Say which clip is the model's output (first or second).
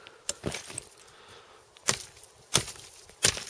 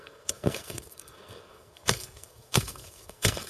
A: second